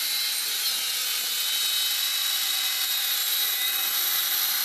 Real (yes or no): yes